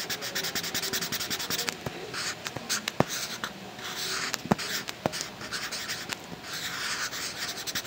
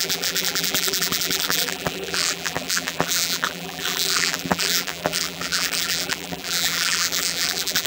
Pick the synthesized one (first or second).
second